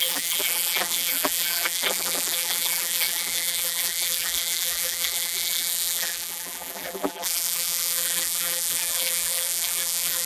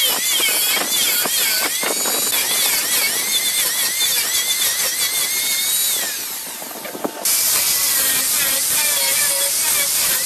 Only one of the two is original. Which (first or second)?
second